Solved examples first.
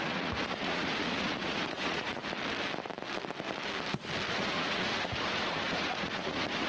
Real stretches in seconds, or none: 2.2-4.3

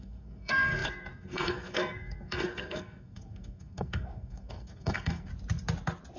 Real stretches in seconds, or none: 5.3-6.2

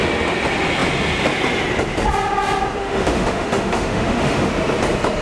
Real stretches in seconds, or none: 0.0-2.8; 4.5-5.2

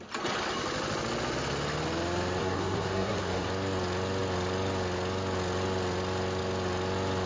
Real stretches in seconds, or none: 0.0-2.4; 3.5-7.3

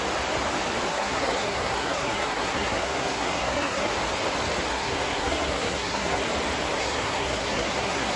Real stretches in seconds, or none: 0.0-0.9; 3.9-4.7; 6.2-6.8

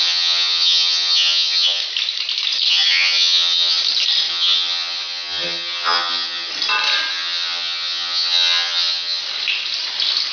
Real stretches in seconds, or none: 1.8-2.7; 3.8-4.3; 6.5-7.1; 9.2-10.3

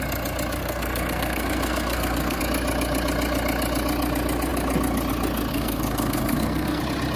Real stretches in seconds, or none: 0.0-0.6; 2.4-5.5; 6.8-7.2

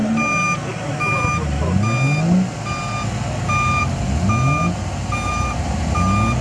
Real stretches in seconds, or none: 0.0-5.3; 5.9-6.4